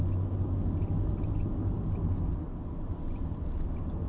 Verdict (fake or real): real